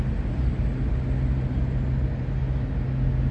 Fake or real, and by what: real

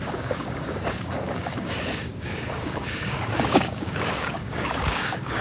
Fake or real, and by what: fake, codec, DAC